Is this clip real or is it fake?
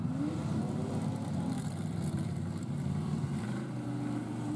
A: fake